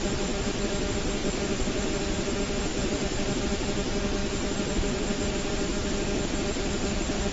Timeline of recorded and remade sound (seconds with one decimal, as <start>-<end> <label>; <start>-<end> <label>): 0.0-1.2 recorded; 1.2-2.3 remade; 2.3-2.7 recorded; 2.7-3.3 remade; 3.3-4.2 recorded; 4.2-5.9 remade; 5.9-7.3 recorded